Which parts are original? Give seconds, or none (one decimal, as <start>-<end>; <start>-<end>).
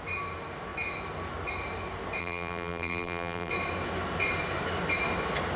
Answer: 0.0-2.2; 3.5-5.6